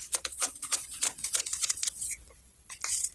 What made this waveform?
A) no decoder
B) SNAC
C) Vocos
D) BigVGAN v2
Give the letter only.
C